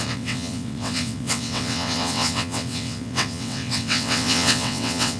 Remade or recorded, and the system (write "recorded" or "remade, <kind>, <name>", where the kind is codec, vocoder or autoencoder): remade, vocoder, WaveNeXt